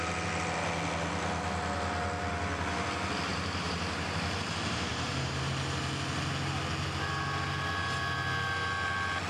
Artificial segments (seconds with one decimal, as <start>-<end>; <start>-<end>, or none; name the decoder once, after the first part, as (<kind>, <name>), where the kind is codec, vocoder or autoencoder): 3.3-4.2 (vocoder, BigVGAN v2); 4.9-5.5